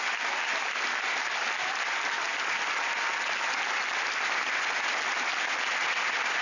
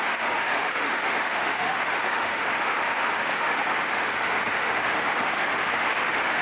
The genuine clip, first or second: first